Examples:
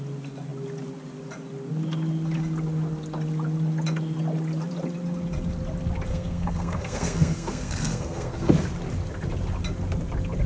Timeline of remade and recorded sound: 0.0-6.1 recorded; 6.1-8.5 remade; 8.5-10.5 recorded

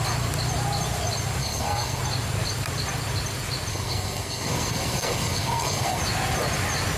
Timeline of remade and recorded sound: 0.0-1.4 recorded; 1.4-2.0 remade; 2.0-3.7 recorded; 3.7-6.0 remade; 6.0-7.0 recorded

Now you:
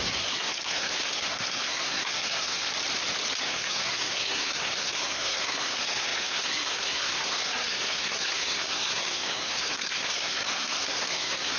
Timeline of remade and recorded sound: 0.0-2.7 remade; 2.7-3.4 recorded; 3.4-11.6 remade

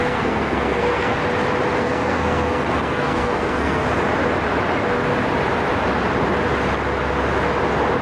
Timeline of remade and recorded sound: 0.0-1.2 remade; 1.2-1.8 recorded; 1.8-3.8 remade; 3.8-8.0 recorded